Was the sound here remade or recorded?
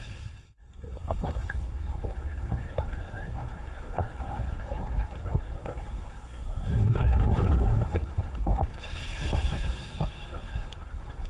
remade